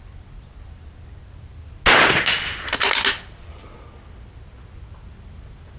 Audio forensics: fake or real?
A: real